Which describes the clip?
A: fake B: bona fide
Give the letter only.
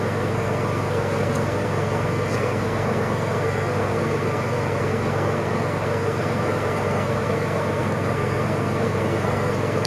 A